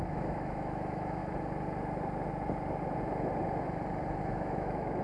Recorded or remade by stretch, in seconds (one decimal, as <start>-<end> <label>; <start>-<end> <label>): 0.0-1.2 remade; 1.2-4.2 recorded; 4.2-5.0 remade